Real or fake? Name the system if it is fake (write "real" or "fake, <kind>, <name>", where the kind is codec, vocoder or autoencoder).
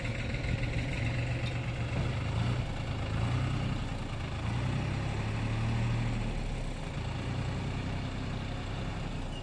real